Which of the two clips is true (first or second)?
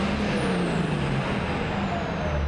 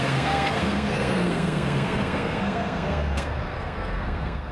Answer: first